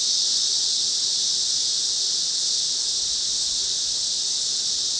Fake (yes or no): no